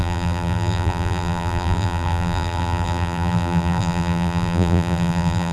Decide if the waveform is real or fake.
fake